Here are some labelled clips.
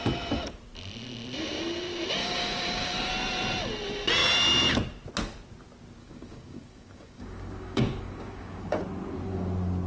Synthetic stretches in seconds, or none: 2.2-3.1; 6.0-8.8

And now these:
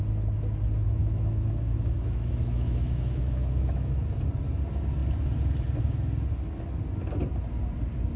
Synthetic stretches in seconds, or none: 1.0-4.0

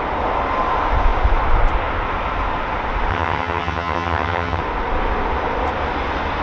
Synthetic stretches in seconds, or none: 3.1-4.6

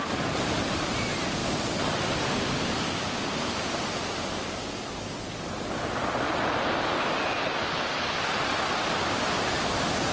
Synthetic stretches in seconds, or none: 1.4-4.6; 7.2-7.7

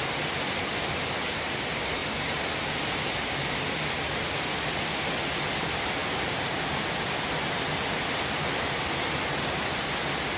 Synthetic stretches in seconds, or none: 6.0-6.8

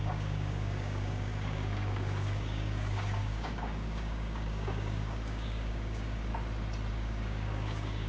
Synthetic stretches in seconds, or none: 0.0-6.3; 6.9-8.1

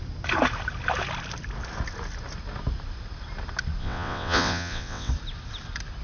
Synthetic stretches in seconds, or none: 3.8-5.1

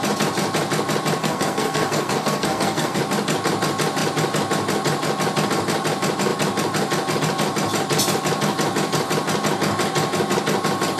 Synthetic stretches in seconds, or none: 1.2-3.0